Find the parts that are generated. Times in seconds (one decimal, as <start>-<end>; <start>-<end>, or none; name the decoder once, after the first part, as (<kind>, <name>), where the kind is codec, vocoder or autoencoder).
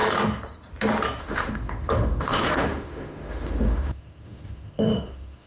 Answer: 1.2-5.5 (autoencoder, DAC-VAE)